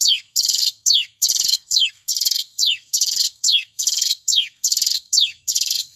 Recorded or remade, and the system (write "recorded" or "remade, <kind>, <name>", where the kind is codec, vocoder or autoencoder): remade, codec, SNAC